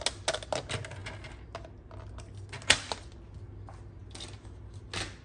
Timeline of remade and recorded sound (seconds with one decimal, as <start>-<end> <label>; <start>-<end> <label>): 0.0-5.2 recorded